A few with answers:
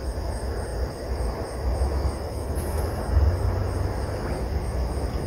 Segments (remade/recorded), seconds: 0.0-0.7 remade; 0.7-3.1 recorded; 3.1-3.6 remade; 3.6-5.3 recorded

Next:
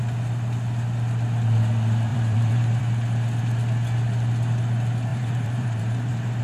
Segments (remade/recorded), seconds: 0.0-2.1 recorded; 2.1-2.8 remade; 2.8-5.1 recorded; 5.1-6.4 remade